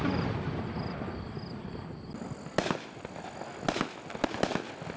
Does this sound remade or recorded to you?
recorded